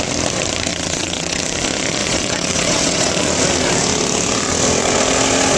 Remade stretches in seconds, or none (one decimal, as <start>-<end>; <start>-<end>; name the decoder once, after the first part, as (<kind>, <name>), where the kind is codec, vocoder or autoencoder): 0.7-1.4 (vocoder, WaveNeXt); 2.0-3.1